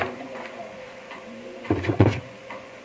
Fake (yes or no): yes